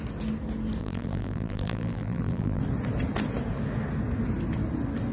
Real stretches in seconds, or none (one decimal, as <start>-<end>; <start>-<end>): 0.0-0.8; 2.6-5.1